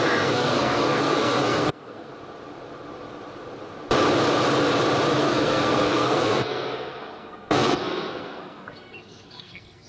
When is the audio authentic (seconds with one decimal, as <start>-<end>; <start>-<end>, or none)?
2.1-5.2